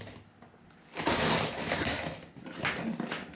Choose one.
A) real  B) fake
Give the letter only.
A